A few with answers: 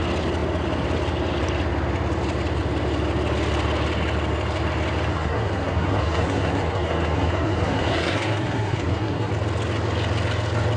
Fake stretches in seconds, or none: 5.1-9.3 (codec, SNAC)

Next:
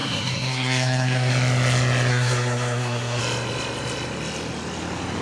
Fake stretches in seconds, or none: 0.0-1.3 (codec, SNAC); 2.1-3.2

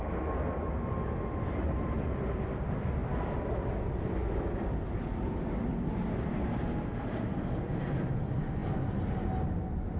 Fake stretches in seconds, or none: none

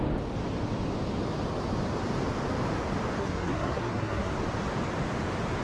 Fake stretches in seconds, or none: 3.2-4.3 (codec, SNAC)